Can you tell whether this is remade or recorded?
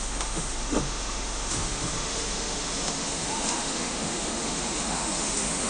remade